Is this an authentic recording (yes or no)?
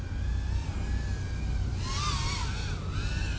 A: yes